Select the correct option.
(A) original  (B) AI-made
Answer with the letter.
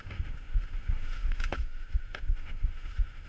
B